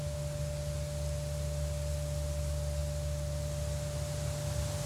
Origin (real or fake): real